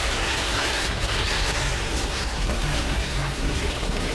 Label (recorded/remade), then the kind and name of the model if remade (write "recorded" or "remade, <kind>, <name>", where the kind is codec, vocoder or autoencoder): remade, codec, SNAC